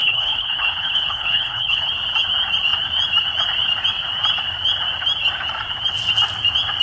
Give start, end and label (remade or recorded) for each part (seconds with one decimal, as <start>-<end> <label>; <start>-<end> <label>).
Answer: 0.0-1.9 remade; 1.9-6.8 recorded